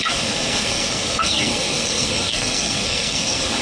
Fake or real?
fake